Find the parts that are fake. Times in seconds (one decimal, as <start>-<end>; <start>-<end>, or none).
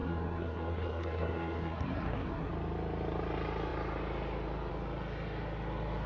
0.0-2.5